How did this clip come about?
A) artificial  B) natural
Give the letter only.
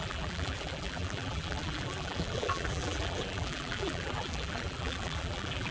A